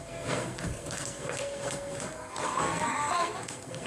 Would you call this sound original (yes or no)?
no